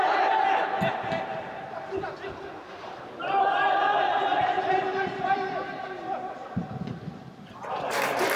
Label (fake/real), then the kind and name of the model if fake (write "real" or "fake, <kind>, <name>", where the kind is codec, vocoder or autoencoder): real